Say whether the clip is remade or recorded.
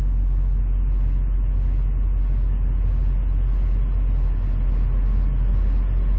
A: recorded